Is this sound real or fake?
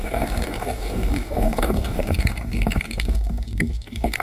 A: fake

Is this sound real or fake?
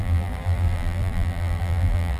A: fake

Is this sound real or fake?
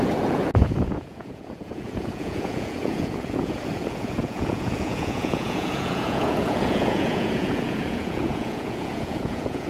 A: fake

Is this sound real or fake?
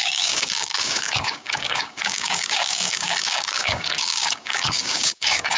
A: fake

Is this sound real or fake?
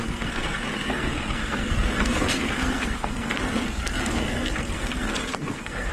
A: fake